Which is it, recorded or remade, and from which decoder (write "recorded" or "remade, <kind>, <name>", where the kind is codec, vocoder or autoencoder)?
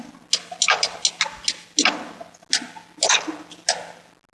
recorded